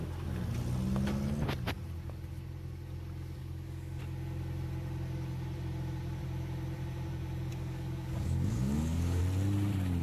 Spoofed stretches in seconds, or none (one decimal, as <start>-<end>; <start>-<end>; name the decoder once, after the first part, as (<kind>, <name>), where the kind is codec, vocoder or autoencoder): 3.4-4.0 (codec, DAC); 7.5-9.2